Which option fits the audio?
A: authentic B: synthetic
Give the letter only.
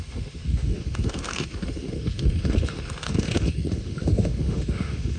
B